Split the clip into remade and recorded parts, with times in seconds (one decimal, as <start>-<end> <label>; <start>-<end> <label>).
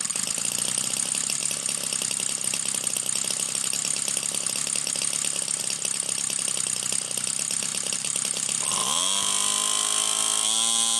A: 0.0-7.7 recorded; 7.7-8.6 remade; 8.6-11.0 recorded